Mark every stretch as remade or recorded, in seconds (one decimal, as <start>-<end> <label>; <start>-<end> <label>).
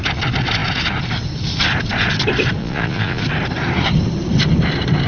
0.0-2.6 recorded; 2.6-3.2 remade; 3.2-5.1 recorded